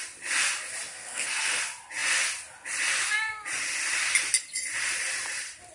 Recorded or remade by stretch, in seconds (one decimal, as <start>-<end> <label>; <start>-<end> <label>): 0.0-0.9 recorded; 0.9-1.6 remade; 1.6-5.7 recorded